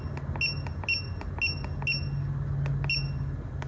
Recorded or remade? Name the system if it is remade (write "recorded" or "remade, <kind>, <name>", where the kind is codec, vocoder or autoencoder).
recorded